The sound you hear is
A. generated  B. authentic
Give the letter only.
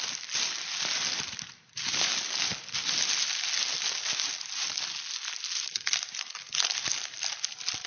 B